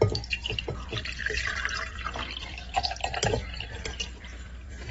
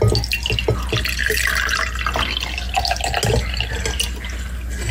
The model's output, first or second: first